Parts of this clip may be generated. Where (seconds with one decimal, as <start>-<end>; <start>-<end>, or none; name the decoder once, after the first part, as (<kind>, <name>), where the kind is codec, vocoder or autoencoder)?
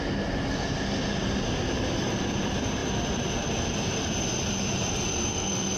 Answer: 5.1-5.8 (codec, SNAC)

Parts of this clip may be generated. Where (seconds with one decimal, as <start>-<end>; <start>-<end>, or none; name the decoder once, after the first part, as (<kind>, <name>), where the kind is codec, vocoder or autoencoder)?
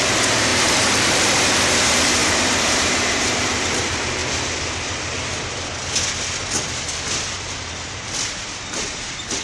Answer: 0.0-4.2 (vocoder, BigVGAN v2); 8.8-9.4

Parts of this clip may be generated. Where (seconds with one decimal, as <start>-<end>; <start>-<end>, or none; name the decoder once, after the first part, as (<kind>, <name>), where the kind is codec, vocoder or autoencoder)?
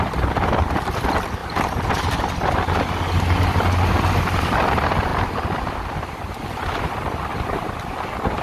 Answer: 0.0-1.4 (vocoder, BigVGAN v2); 4.4-5.1; 5.9-8.4